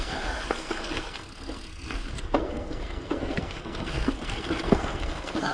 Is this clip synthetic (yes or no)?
yes